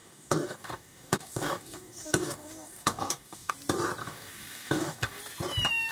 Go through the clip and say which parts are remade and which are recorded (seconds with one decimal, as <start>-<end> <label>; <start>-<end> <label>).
0.0-3.5 remade; 3.5-4.0 recorded; 4.0-5.2 remade; 5.2-5.9 recorded